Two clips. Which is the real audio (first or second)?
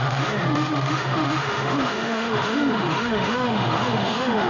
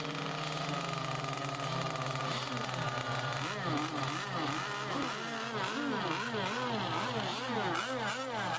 second